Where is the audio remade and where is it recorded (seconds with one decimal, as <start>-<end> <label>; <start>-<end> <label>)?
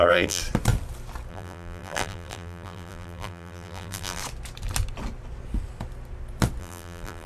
0.0-0.4 remade; 0.4-1.3 recorded; 1.3-4.2 remade; 4.2-6.6 recorded; 6.6-7.3 remade